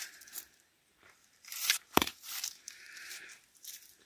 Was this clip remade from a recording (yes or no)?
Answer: yes